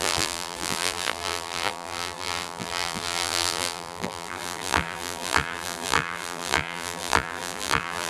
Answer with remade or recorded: remade